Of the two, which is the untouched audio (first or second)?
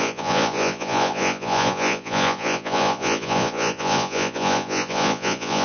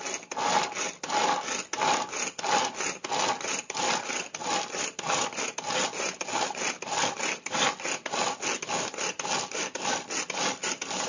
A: second